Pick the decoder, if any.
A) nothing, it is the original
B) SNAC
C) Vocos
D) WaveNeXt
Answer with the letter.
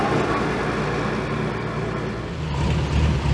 A